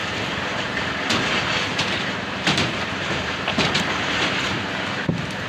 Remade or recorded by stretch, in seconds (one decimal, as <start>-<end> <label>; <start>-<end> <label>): 0.0-0.8 remade; 0.8-1.7 recorded; 1.7-5.0 remade; 5.0-5.5 recorded